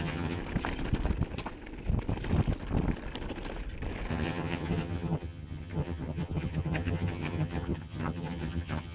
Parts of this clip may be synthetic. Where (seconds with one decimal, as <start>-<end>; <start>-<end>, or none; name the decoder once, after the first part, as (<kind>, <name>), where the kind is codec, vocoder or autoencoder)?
0.0-0.4 (vocoder, HiFi-GAN); 4.1-8.9